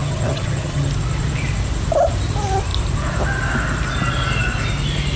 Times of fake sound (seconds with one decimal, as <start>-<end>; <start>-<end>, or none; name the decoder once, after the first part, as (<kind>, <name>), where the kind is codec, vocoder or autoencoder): 0.0-0.9 (vocoder, HiFi-GAN)